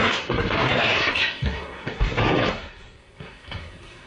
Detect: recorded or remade remade